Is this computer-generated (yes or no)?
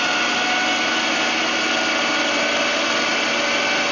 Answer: no